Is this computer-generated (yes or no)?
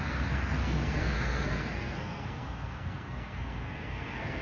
yes